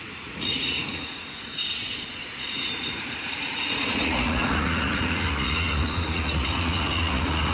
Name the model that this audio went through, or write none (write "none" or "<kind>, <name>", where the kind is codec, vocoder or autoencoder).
vocoder, Vocos